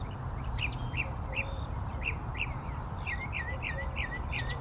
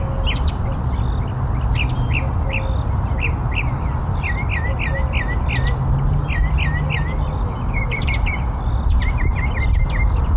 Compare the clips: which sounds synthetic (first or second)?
first